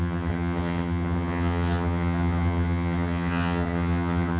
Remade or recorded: remade